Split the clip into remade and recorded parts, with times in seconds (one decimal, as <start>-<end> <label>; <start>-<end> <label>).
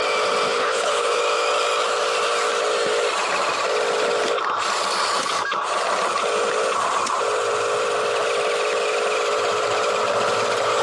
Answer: 0.0-0.5 recorded; 0.5-1.2 remade; 1.2-10.8 recorded